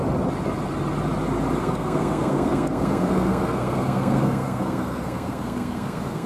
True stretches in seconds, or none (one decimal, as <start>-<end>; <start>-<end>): 0.0-1.6